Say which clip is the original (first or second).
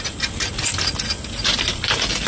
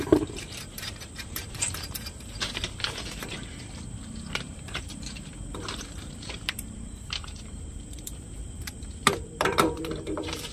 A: first